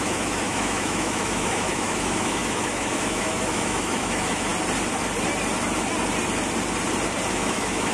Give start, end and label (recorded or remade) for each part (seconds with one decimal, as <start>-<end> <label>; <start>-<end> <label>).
0.0-4.5 remade; 4.5-7.3 recorded; 7.3-7.9 remade